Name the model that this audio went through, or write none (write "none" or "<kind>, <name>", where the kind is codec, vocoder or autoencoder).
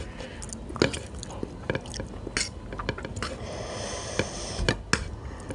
none